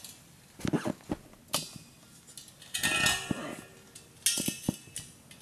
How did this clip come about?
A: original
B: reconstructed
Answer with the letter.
A